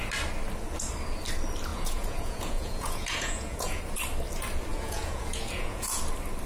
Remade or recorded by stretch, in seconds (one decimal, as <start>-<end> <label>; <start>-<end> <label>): 0.0-1.7 recorded; 1.7-3.8 remade; 3.8-4.7 recorded; 4.7-6.0 remade; 6.0-6.5 recorded